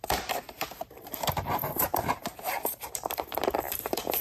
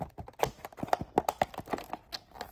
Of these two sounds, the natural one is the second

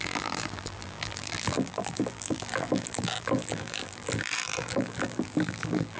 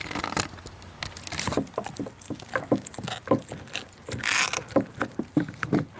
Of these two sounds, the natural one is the second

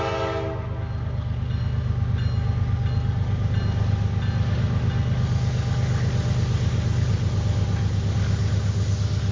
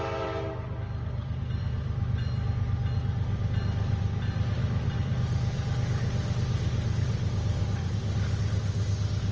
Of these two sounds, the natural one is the first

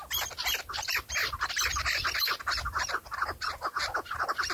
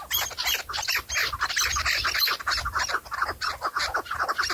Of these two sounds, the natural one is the second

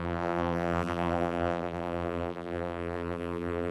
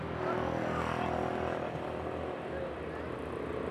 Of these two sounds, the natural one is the second